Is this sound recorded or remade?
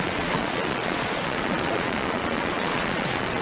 remade